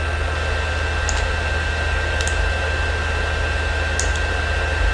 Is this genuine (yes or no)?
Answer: yes